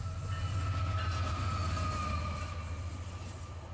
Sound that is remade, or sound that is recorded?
recorded